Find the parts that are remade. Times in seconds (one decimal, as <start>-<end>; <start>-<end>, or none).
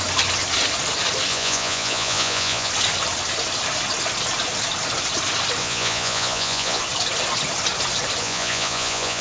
1.3-2.7; 5.6-6.8; 8.2-9.2